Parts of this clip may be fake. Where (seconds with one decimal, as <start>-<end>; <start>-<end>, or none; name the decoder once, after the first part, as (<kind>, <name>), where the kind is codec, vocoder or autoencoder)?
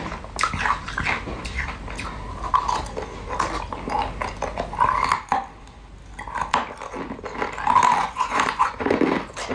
8.0-9.0 (vocoder, Vocos)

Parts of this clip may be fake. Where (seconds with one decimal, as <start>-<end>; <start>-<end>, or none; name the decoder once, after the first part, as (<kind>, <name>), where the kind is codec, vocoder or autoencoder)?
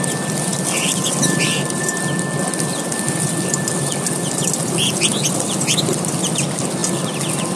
none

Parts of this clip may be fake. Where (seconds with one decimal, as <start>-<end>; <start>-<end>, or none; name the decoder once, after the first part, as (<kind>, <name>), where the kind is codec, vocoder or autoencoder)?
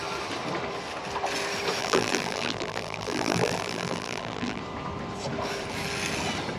1.8-4.6 (vocoder, BigVGAN v2)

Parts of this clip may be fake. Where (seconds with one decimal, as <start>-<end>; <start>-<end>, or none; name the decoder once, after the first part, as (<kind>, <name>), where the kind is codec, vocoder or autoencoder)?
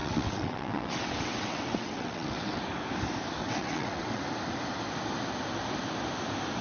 0.0-2.6 (vocoder, WaveNeXt); 3.4-4.2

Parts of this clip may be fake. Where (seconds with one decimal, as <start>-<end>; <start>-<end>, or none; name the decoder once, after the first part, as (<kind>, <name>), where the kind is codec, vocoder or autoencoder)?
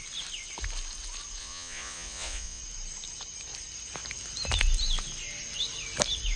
1.4-2.6 (vocoder, Vocos)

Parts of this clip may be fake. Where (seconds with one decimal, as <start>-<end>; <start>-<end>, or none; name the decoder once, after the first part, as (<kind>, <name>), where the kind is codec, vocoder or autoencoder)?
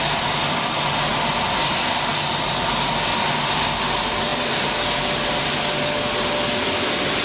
none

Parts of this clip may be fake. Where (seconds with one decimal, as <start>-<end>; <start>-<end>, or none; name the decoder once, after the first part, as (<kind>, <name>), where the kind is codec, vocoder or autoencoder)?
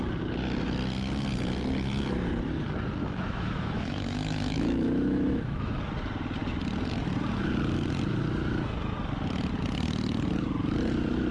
3.0-5.8 (autoencoder, DAC-VAE)